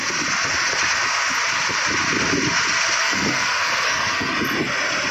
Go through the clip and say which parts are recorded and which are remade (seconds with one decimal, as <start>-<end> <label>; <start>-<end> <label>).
0.0-3.0 recorded; 3.0-4.3 remade; 4.3-5.1 recorded